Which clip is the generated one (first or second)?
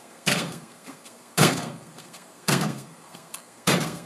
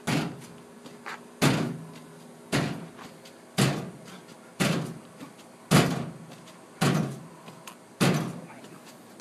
first